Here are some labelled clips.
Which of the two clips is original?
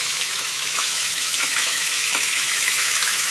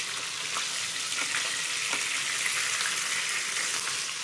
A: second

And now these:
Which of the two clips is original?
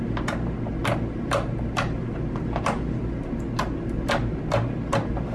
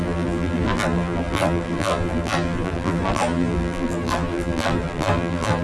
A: first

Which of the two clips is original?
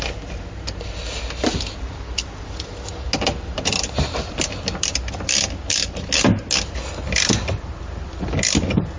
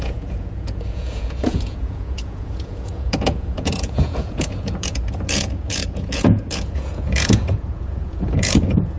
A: first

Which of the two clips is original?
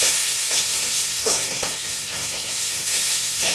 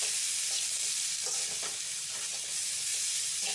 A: second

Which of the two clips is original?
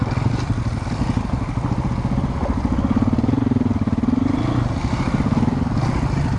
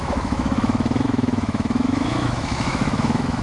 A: first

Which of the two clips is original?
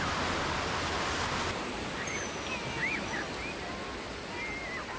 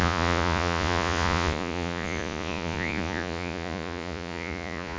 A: first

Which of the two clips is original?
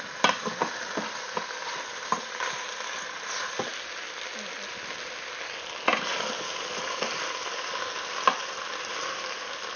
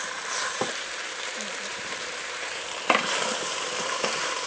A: first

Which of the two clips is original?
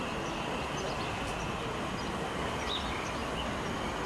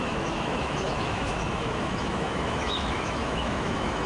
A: first